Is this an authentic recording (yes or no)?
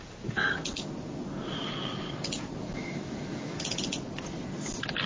yes